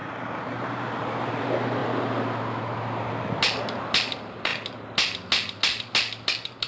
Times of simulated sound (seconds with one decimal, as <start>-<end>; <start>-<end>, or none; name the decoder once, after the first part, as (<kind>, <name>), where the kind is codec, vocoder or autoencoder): none